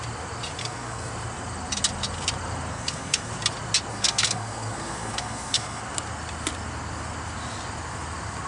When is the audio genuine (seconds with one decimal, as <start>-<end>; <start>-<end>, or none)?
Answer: 0.0-0.6; 1.1-2.7; 3.3-3.9; 5.8-8.5